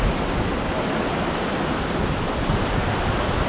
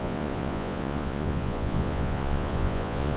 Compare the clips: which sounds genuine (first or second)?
first